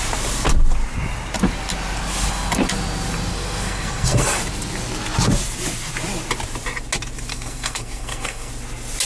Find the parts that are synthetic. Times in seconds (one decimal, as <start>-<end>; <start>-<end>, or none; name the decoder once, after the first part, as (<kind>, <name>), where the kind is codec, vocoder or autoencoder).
3.3-4.4 (codec, SNAC); 7.3-8.5